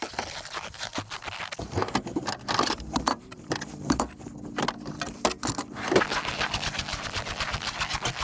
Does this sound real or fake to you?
real